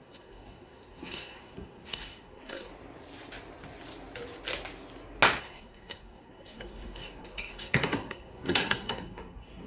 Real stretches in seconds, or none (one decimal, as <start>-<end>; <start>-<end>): 2.7-5.4